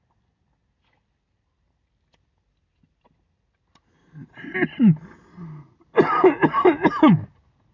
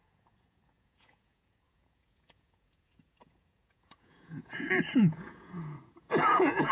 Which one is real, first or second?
first